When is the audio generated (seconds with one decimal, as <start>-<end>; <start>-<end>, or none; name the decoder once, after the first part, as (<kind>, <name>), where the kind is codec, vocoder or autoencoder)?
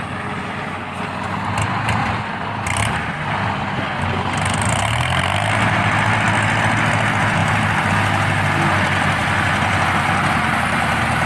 2.0-4.8 (vocoder, BigVGAN v2); 7.4-7.9; 9.2-10.3